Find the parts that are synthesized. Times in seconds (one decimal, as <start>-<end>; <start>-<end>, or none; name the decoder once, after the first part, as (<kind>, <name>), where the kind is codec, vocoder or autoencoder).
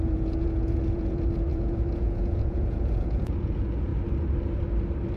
0.0-3.9 (vocoder, Vocos)